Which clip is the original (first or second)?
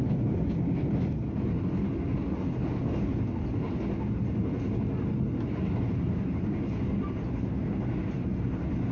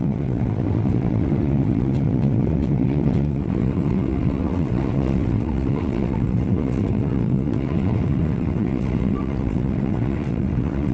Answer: first